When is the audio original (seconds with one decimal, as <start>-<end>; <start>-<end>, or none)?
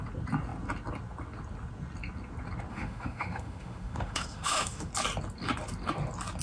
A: 0.0-2.7; 4.9-6.4